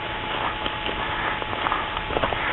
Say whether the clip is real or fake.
real